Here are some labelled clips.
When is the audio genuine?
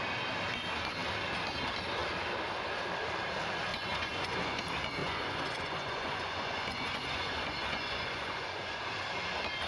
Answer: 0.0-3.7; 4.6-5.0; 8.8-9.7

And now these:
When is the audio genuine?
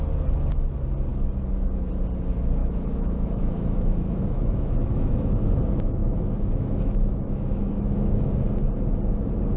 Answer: 0.0-2.6; 5.6-6.0; 8.3-9.6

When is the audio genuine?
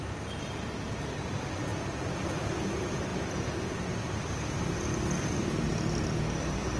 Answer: 0.0-6.8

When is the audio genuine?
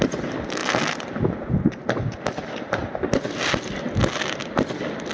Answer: 0.0-5.1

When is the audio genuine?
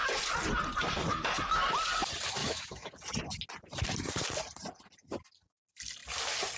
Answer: 0.0-2.4; 2.9-6.6